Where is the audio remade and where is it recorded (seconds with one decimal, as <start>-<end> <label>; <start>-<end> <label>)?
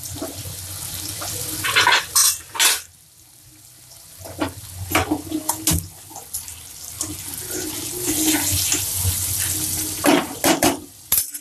0.0-11.4 recorded